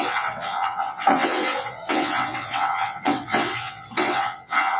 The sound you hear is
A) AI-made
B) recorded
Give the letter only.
A